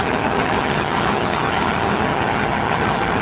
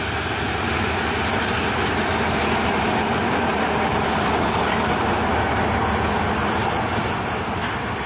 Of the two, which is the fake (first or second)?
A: first